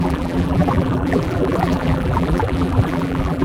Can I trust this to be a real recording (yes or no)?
no